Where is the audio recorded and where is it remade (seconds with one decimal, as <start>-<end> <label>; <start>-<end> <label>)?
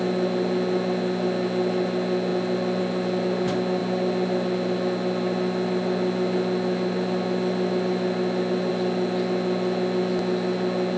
0.0-11.0 recorded